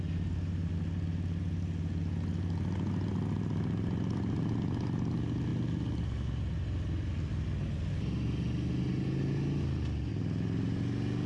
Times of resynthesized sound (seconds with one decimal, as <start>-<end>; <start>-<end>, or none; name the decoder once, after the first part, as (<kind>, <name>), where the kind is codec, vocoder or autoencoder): none